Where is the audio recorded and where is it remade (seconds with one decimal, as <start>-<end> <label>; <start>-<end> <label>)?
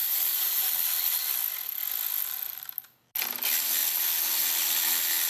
0.0-0.7 remade; 0.7-5.3 recorded